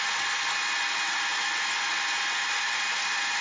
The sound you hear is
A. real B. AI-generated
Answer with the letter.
A